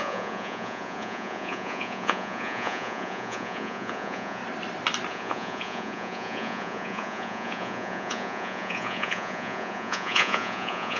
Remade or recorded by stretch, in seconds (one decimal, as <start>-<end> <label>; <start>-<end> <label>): 0.0-4.4 remade; 4.4-5.1 recorded; 5.1-11.0 remade

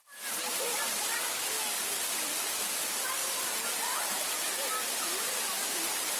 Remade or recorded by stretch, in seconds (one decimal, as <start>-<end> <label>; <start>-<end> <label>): 0.0-6.2 recorded

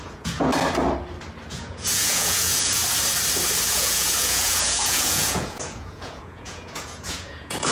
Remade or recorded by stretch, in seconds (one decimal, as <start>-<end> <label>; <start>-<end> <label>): 0.0-0.5 remade; 0.5-1.5 recorded; 1.5-2.8 remade; 2.8-3.7 recorded; 3.7-7.7 remade

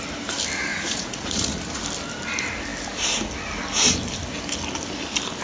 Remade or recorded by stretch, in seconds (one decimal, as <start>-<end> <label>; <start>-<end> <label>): 0.0-0.7 recorded; 0.7-1.8 remade; 1.8-5.4 recorded

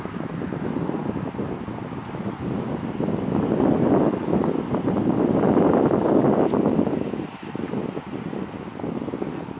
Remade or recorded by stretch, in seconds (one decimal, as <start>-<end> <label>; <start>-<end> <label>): 0.0-9.6 recorded

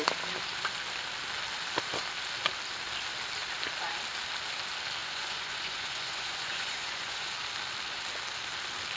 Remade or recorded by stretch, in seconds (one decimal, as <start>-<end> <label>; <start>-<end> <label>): 0.0-5.0 recorded; 5.0-7.3 remade; 7.3-9.0 recorded

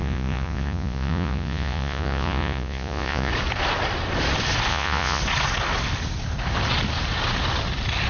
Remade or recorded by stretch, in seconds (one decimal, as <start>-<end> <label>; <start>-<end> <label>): 0.0-3.3 remade; 3.3-4.7 recorded; 4.7-5.2 remade; 5.2-8.1 recorded

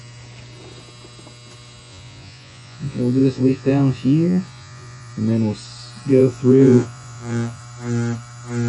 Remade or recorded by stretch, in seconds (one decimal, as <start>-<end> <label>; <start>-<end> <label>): 0.0-1.8 recorded; 1.8-5.1 remade; 5.1-6.1 recorded; 6.1-7.6 remade; 7.6-8.7 recorded